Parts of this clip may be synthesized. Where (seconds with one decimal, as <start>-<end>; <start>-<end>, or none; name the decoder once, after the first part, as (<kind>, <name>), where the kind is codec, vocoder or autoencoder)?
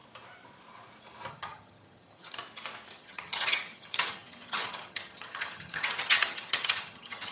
1.3-2.4 (vocoder, HiFi-GAN); 2.9-7.3